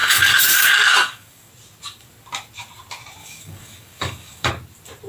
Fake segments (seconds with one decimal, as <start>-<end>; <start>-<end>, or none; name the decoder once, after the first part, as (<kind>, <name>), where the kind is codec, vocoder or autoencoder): 0.0-1.5 (codec, DAC); 3.2-4.5